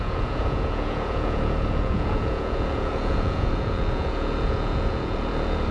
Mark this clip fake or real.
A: fake